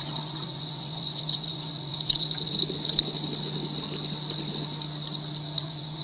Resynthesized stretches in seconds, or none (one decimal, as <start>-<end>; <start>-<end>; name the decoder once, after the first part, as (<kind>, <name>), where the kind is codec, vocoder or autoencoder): 0.0-2.6 (vocoder, Vocos); 5.6-6.0